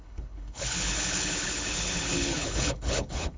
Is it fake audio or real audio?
fake